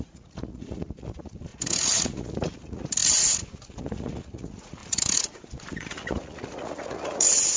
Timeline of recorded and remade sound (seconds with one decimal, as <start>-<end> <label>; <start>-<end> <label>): 0.0-7.6 remade